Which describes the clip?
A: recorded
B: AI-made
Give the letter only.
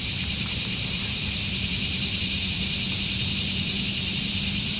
B